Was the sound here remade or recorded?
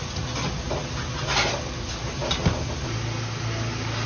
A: recorded